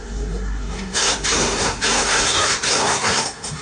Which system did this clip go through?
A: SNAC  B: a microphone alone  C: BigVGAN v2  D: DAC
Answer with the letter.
A